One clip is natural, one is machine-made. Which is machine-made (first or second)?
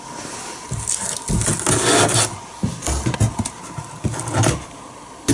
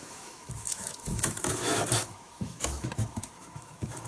second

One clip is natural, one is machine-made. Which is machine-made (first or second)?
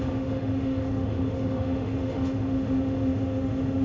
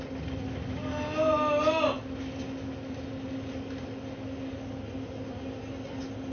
first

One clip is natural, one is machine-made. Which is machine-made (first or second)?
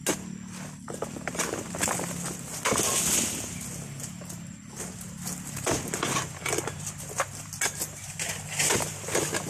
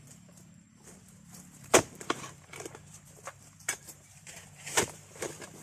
second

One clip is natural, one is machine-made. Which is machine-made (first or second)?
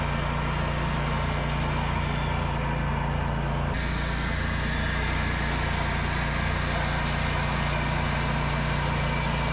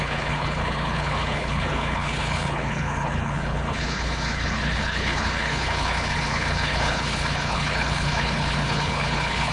second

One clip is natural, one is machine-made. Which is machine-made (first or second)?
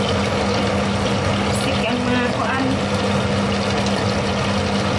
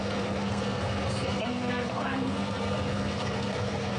second